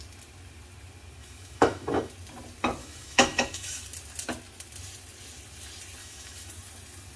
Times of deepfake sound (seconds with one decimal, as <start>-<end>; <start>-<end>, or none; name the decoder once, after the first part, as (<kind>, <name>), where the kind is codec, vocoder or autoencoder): 1.2-2.1 (autoencoder, DAC-VAE); 2.8-3.8; 6.0-6.5